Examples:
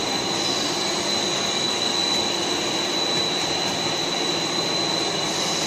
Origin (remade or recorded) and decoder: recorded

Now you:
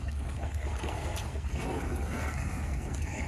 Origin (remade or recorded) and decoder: remade, codec, SNAC